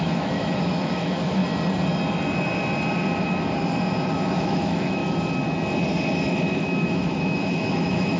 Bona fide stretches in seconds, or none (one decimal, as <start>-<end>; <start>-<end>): 1.4-4.1; 5.0-6.3